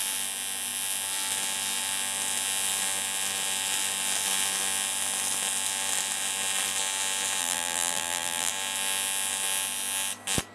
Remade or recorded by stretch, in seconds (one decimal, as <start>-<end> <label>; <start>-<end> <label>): 0.0-7.4 recorded; 7.4-8.5 remade; 8.5-10.5 recorded